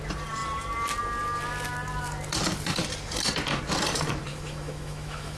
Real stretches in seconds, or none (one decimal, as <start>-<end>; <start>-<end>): 0.0-4.3